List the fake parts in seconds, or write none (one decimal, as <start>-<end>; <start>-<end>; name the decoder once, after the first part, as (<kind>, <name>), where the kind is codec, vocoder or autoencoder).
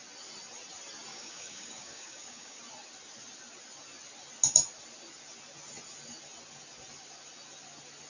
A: 1.1-2.6 (codec, DAC)